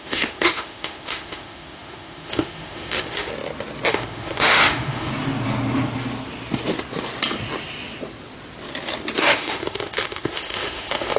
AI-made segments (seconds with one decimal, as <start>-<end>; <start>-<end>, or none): 0.0-3.3; 3.9-5.1; 9.2-11.2